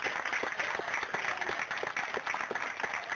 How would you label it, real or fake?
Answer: real